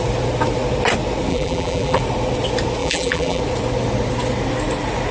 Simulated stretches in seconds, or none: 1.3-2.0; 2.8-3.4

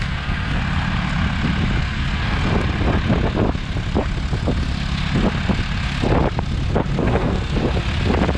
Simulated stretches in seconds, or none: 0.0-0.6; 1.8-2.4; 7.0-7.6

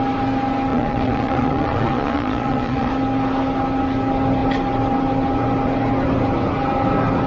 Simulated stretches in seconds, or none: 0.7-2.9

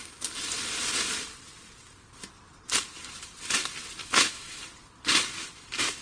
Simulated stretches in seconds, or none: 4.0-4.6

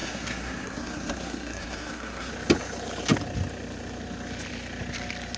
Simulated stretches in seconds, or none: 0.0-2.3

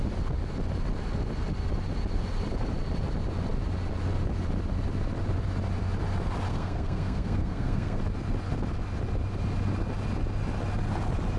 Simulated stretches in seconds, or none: 6.5-8.0